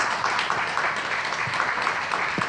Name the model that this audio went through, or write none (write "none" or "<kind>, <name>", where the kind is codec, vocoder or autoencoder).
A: none